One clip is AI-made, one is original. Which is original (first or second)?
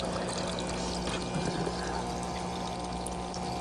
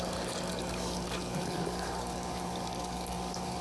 first